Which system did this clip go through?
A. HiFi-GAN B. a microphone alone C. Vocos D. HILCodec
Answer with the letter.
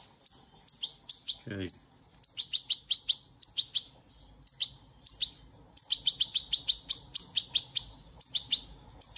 B